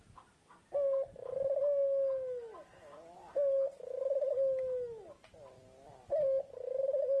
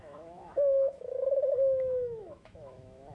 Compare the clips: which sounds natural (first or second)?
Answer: first